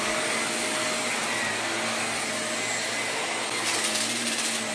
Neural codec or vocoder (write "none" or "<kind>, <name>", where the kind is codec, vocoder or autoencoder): none